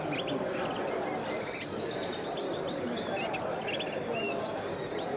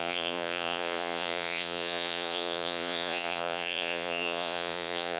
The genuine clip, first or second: first